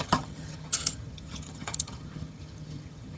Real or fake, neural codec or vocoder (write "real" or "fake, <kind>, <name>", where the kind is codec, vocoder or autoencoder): fake, vocoder, HiFi-GAN